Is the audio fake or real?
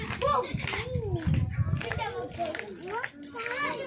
real